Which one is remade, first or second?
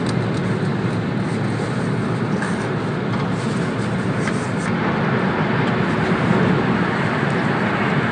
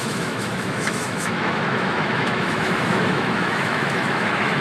second